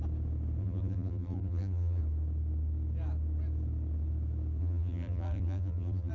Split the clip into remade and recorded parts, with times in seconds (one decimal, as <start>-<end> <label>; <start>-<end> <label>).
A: 0.0-0.6 recorded; 0.6-2.0 remade; 2.0-4.6 recorded; 4.6-6.1 remade